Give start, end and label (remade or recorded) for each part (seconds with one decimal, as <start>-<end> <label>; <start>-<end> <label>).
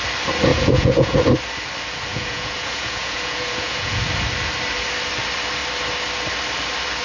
0.0-0.5 recorded; 0.5-1.2 remade; 1.2-2.1 recorded; 2.1-4.0 remade; 4.0-7.0 recorded